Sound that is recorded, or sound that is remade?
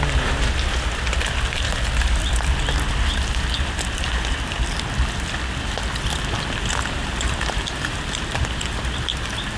recorded